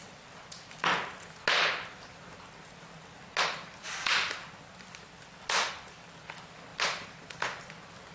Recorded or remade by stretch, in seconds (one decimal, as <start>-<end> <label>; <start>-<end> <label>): 0.0-0.9 remade; 0.9-5.7 recorded; 5.7-6.7 remade; 6.7-8.1 recorded